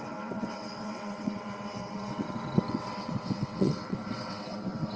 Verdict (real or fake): fake